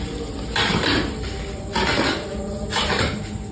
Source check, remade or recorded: recorded